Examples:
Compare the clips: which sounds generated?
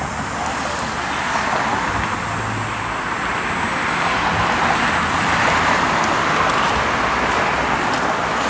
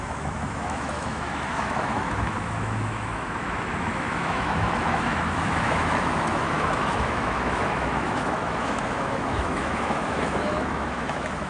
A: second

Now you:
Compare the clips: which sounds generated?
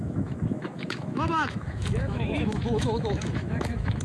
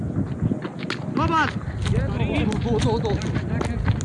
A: first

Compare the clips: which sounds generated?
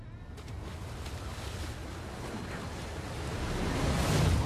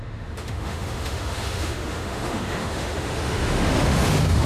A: second